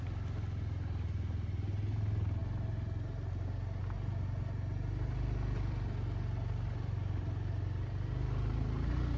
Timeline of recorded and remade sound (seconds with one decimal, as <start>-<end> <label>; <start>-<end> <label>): 0.0-9.2 recorded